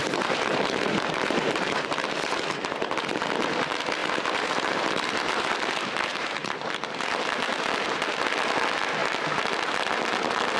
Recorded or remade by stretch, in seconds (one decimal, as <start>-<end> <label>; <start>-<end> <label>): 0.0-2.9 remade; 2.9-4.0 recorded; 4.0-5.5 remade; 5.5-6.1 recorded; 6.1-7.2 remade; 7.2-10.6 recorded